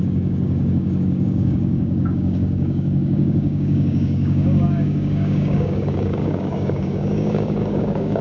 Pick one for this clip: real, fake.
fake